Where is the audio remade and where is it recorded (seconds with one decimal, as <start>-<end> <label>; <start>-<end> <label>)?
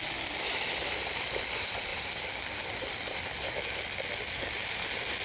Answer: 0.0-5.2 recorded